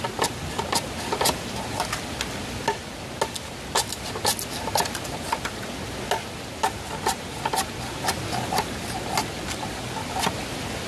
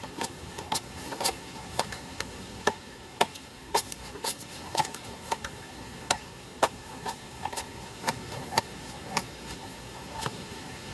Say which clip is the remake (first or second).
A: second